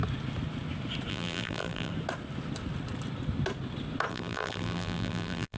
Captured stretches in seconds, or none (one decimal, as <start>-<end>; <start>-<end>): 0.0-1.1; 1.9-4.1